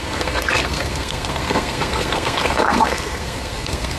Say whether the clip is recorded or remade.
remade